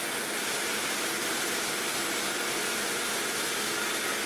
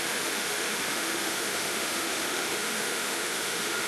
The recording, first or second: first